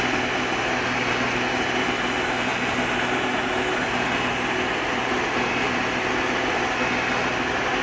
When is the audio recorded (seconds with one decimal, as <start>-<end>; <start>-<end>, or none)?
0.0-7.8